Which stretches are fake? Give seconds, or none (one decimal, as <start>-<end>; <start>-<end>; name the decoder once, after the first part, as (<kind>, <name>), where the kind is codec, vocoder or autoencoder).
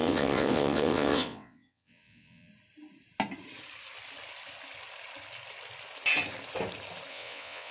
0.0-2.5 (vocoder, WaveNeXt); 7.1-7.7